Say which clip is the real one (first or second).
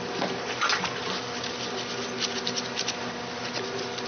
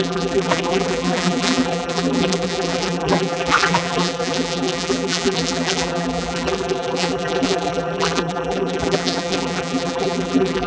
first